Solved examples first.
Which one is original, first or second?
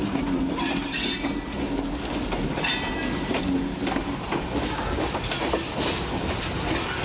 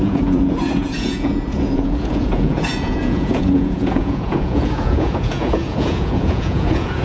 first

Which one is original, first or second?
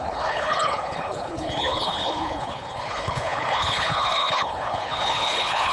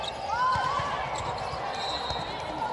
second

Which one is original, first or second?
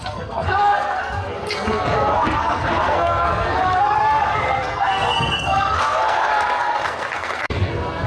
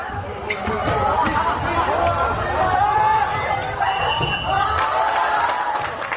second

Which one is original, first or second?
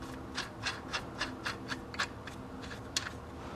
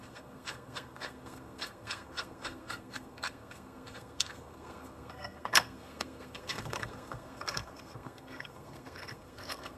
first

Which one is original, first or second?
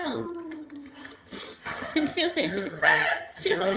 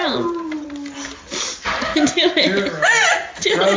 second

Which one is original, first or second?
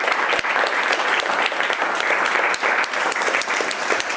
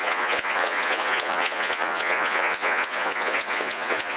first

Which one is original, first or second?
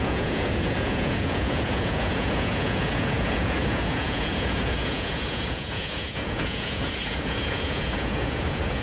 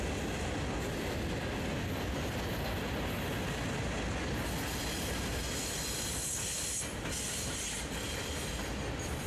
second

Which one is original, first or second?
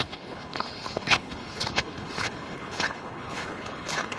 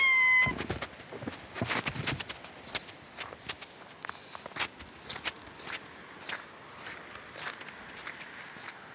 second